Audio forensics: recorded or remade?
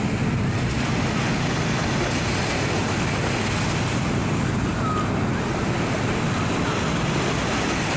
recorded